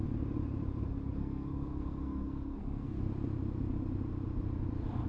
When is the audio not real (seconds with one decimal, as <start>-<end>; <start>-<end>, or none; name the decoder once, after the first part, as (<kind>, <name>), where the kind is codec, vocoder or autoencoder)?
1.2-3.0 (codec, SNAC)